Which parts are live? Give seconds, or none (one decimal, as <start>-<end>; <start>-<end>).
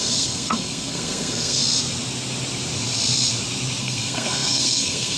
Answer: 1.6-3.8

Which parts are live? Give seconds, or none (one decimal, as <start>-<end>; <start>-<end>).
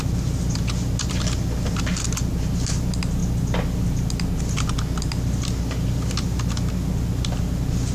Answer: 0.0-7.9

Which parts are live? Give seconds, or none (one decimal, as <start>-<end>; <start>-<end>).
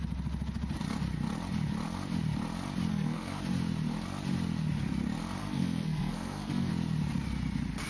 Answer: 0.0-2.9; 3.4-5.4; 6.7-7.9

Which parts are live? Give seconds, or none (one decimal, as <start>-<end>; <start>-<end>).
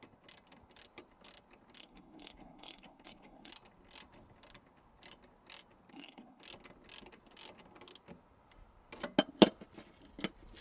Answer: 0.0-1.8; 3.5-5.9; 6.4-10.6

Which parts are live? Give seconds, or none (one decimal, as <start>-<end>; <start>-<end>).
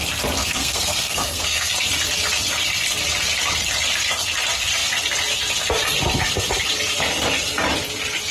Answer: 0.0-0.4; 1.7-8.3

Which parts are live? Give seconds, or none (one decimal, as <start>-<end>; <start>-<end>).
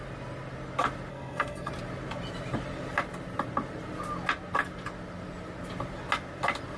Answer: 0.0-1.1; 1.7-6.8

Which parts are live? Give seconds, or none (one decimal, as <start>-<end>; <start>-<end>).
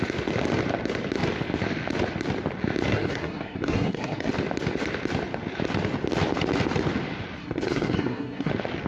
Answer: 0.0-2.9; 4.3-7.4; 8.5-8.9